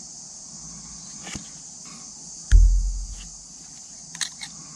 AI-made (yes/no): no